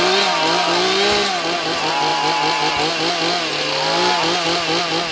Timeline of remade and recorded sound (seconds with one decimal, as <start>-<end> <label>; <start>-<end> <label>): 0.0-5.1 recorded